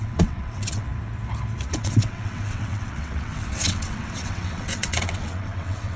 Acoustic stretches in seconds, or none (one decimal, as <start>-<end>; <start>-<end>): 0.9-1.7